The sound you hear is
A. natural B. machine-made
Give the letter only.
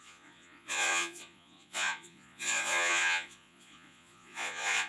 B